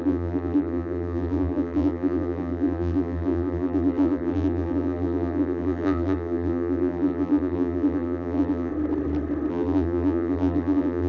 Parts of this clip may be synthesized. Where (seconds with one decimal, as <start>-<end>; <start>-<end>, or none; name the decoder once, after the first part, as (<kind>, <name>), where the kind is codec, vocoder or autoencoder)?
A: 0.0-8.7 (vocoder, BigVGAN v2); 9.5-11.1